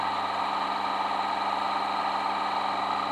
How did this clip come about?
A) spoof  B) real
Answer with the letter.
B